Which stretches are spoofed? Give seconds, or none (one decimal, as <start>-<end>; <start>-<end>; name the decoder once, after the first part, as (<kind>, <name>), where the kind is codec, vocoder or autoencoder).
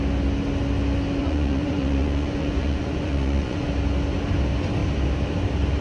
1.2-3.7 (vocoder, Vocos)